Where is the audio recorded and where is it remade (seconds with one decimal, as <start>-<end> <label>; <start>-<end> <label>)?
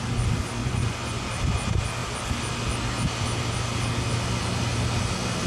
0.0-0.6 recorded; 0.6-1.3 remade; 1.3-5.5 recorded